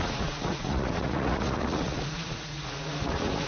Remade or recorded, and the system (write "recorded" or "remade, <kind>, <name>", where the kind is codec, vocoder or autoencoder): remade, vocoder, Vocos